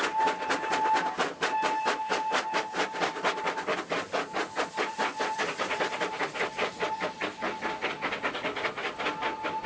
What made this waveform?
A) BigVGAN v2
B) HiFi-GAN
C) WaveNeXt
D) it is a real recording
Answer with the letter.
D